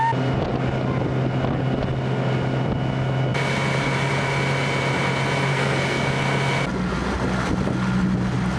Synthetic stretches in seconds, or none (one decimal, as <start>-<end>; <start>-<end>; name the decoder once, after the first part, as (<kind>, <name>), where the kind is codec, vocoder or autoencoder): 5.5-6.1 (codec, SNAC)